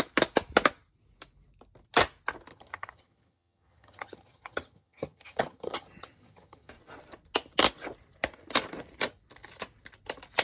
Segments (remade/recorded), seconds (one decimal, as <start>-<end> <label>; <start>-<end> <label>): 0.0-2.5 recorded; 2.5-6.7 remade; 6.7-10.4 recorded